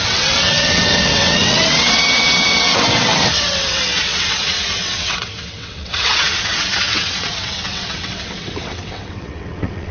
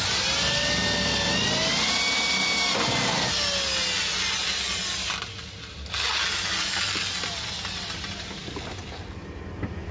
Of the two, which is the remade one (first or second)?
first